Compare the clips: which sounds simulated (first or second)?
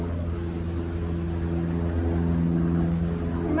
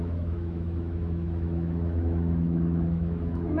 second